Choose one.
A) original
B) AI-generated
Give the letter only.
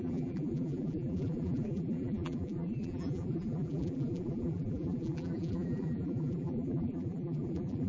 B